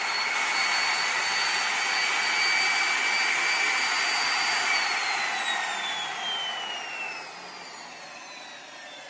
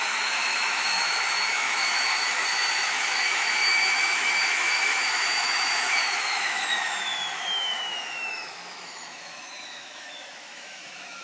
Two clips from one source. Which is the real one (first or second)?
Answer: first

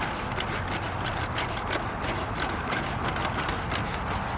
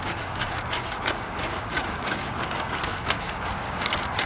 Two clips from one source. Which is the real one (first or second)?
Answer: first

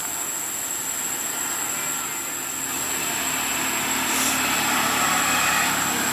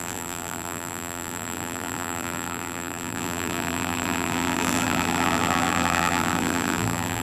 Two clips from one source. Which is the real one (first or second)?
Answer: first